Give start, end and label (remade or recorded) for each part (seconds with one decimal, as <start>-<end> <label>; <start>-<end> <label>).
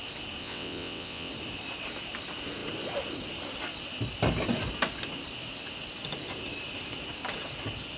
0.0-0.4 recorded; 0.4-1.3 remade; 1.3-8.0 recorded